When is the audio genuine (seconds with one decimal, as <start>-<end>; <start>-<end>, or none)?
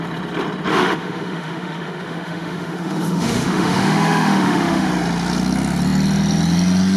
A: 0.0-0.7; 4.9-7.0